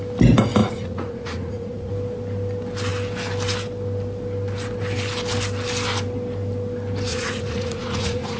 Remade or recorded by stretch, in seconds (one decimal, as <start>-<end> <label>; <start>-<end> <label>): 0.0-0.6 recorded; 0.6-1.9 remade; 1.9-7.1 recorded; 7.1-8.4 remade